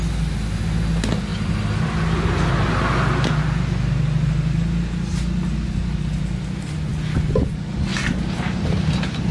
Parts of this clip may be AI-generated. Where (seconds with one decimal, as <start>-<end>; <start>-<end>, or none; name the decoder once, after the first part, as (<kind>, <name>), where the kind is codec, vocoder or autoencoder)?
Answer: 7.9-8.6 (vocoder, BigVGAN v2)